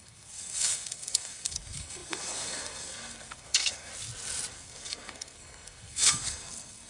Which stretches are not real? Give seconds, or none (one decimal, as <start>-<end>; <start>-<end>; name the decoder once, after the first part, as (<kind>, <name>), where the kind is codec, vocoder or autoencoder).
0.0-3.9 (codec, SNAC); 4.5-6.9